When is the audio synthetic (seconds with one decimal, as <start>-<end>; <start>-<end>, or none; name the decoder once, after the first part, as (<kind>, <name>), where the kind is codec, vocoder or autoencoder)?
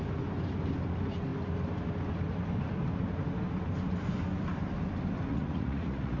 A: 5.3-6.2 (vocoder, Vocos)